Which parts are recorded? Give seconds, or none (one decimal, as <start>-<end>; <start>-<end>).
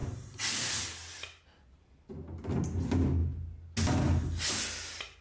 2.5-5.2